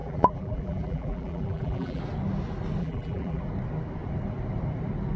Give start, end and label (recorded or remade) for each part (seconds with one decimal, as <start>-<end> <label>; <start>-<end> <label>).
0.0-2.0 remade; 2.0-2.8 recorded; 2.8-3.4 remade; 3.4-5.2 recorded